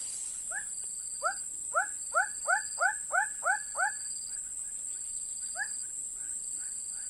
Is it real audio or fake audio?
real